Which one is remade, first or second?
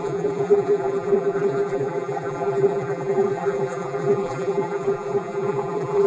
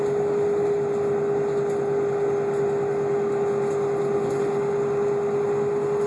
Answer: first